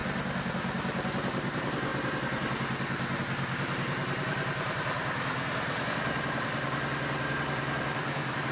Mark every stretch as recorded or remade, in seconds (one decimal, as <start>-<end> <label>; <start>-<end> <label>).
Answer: 0.0-0.5 recorded; 0.5-8.5 remade